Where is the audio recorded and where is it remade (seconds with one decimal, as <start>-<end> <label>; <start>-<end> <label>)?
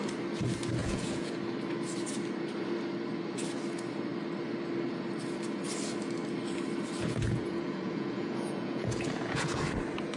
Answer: 0.0-0.8 recorded; 0.8-1.3 remade; 1.3-7.0 recorded; 7.0-9.6 remade; 9.6-10.2 recorded